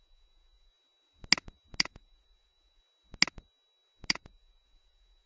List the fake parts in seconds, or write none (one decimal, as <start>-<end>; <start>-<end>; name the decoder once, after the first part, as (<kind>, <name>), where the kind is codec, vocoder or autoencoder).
0.0-0.7 (vocoder, Vocos); 1.8-2.8; 4.1-5.3